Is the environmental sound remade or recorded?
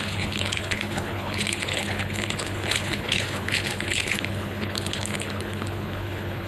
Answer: remade